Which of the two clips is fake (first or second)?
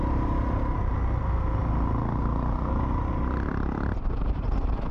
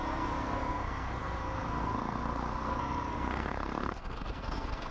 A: second